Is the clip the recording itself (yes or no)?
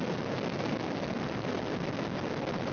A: yes